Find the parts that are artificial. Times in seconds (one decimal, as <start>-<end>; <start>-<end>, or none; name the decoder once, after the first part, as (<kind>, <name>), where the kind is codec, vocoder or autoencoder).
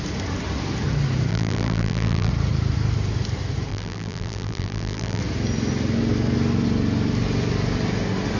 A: 1.3-2.3 (vocoder, BigVGAN v2); 3.7-5.2